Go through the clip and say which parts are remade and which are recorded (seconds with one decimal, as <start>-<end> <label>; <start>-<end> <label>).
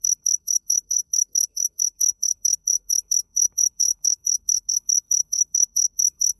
0.0-6.4 remade